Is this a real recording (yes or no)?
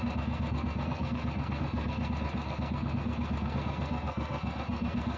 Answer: no